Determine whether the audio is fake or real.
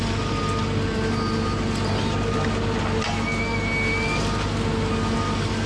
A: real